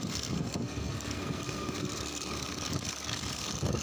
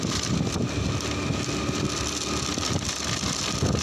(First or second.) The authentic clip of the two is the second